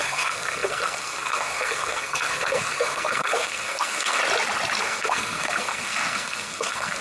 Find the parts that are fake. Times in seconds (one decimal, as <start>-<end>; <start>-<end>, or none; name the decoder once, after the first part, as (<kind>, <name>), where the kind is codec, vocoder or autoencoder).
0.0-4.2 (codec, SNAC); 4.8-7.0